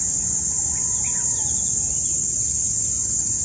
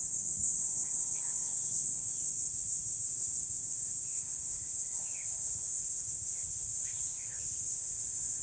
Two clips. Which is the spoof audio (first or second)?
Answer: second